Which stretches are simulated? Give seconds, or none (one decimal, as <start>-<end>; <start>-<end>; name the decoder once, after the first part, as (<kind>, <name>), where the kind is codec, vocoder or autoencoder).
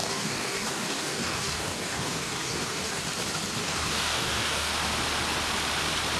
0.0-3.0 (codec, DAC); 3.6-4.7